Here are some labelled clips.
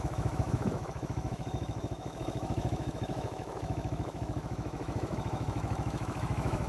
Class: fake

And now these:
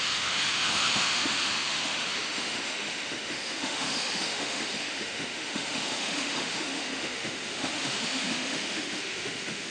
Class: fake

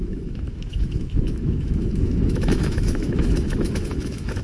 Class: fake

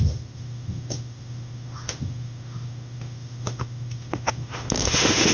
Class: fake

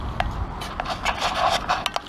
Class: real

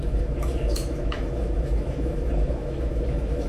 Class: fake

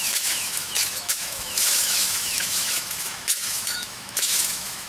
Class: fake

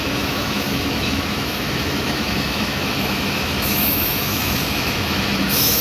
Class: fake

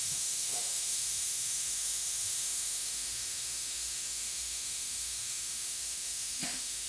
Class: fake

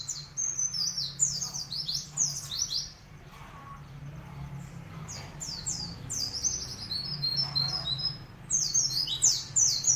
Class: real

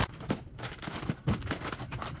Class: real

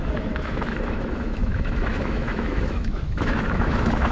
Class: fake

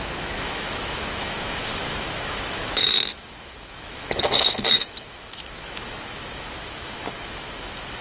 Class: fake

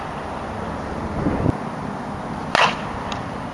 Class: real